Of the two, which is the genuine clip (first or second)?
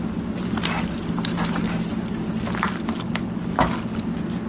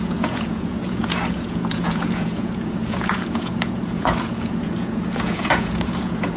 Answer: first